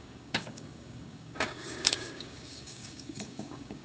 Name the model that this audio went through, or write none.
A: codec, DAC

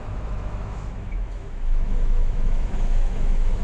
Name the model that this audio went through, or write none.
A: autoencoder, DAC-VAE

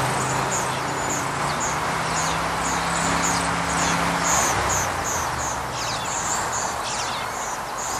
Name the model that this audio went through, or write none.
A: none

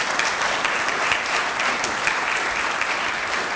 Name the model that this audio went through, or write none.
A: vocoder, BigVGAN v2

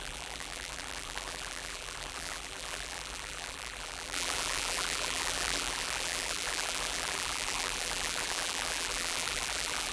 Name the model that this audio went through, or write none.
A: vocoder, BigVGAN v2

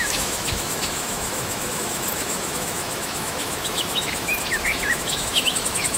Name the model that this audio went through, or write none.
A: autoencoder, DAC-VAE